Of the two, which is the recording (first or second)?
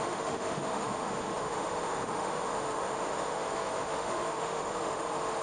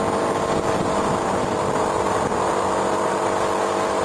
second